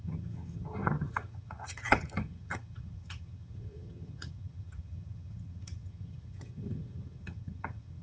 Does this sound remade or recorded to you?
remade